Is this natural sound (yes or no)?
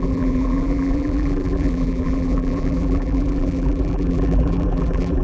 no